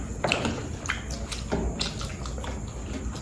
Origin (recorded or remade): recorded